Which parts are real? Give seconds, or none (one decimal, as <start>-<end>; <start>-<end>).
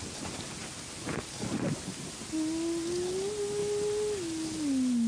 0.0-5.1